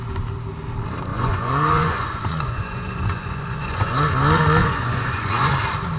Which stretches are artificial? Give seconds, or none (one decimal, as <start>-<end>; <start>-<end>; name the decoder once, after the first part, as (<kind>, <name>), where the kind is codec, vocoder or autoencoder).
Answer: 1.1-4.1 (vocoder, Vocos); 4.6-5.5